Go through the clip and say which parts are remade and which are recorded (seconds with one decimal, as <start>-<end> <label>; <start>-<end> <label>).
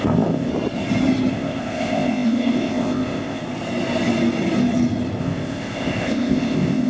0.0-0.5 remade; 0.5-1.3 recorded; 1.3-3.4 remade; 3.4-5.2 recorded; 5.2-6.9 remade